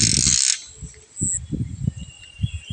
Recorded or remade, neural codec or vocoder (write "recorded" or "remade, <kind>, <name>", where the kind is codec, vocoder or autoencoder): recorded